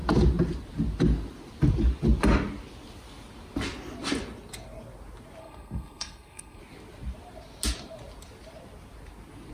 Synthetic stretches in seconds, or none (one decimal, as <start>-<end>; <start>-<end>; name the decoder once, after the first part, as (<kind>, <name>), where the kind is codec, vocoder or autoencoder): 5.4-6.6 (codec, SNAC)